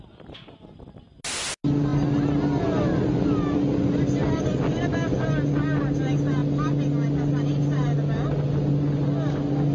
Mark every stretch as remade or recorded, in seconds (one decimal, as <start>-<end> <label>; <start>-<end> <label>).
0.0-9.7 recorded